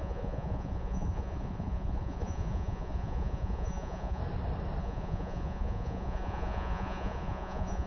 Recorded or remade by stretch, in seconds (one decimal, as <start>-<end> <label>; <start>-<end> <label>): 0.0-4.2 remade; 4.2-4.8 recorded; 4.8-7.9 remade